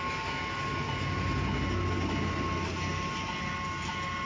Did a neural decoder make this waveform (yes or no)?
no